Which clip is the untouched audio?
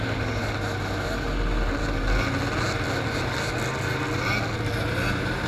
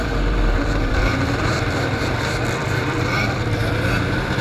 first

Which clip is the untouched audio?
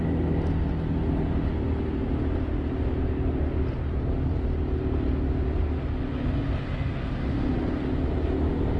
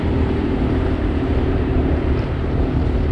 first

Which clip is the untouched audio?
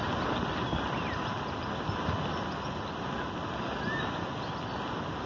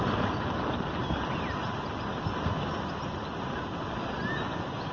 first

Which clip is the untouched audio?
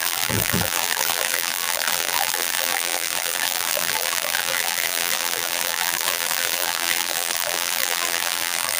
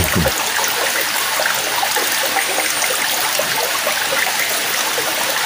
second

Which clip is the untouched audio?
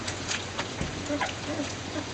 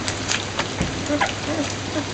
second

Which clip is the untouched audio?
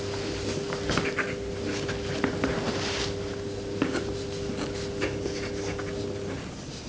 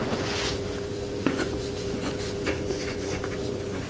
first